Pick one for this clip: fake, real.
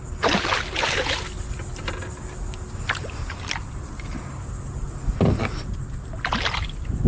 real